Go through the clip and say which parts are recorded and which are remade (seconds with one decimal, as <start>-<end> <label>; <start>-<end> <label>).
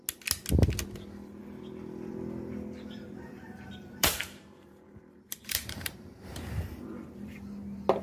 0.0-3.3 recorded; 3.3-6.2 remade; 6.2-8.0 recorded